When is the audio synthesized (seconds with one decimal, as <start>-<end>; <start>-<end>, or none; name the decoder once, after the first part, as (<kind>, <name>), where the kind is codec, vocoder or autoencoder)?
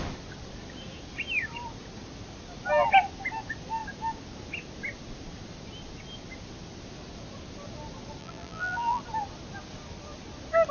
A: 8.2-9.0 (vocoder, BigVGAN v2)